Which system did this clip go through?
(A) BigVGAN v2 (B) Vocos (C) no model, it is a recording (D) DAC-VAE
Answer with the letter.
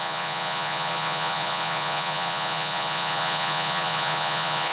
B